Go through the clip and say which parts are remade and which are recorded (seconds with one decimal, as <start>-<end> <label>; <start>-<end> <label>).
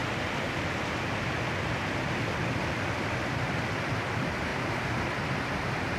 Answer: 0.0-3.6 remade; 3.6-6.0 recorded